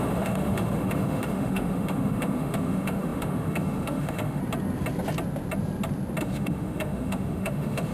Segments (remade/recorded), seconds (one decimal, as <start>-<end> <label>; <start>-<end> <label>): 0.0-4.4 remade; 4.4-6.2 recorded; 6.2-7.9 remade